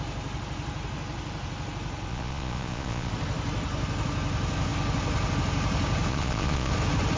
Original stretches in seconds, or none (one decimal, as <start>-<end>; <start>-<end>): 0.0-2.1; 3.1-6.1; 6.7-7.2